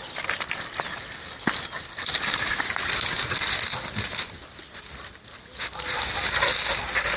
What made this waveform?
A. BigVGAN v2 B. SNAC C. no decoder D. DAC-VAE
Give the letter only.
C